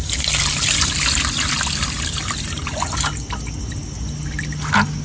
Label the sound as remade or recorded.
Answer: recorded